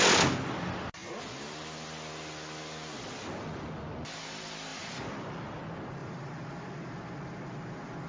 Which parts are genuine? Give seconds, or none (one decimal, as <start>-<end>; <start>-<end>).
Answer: 0.0-4.7; 5.6-6.0; 7.0-8.1

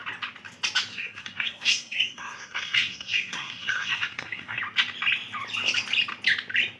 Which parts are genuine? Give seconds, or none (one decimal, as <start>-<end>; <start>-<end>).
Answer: 0.0-0.9; 4.6-6.8

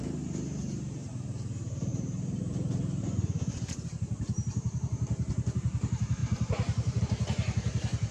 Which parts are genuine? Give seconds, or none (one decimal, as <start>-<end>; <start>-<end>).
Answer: none

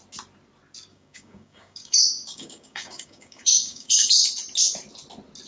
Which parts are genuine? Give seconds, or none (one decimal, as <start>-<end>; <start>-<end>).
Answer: 0.0-0.9; 4.2-5.5

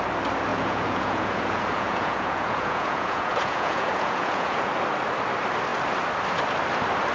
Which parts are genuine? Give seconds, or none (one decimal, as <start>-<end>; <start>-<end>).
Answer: 0.0-0.5; 4.7-7.1